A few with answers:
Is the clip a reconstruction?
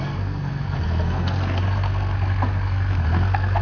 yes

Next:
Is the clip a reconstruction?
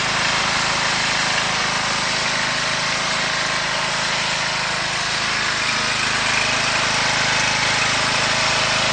no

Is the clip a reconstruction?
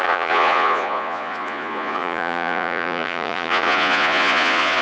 yes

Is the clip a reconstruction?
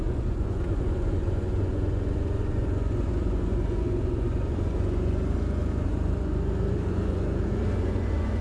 yes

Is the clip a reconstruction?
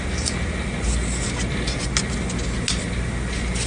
no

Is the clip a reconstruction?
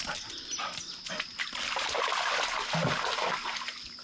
no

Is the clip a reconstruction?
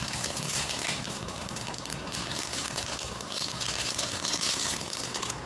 yes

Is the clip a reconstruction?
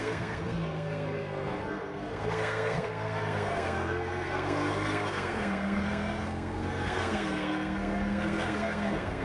yes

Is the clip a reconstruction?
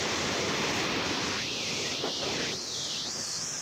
no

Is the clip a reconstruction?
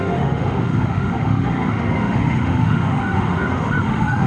yes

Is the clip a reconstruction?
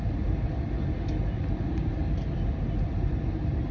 no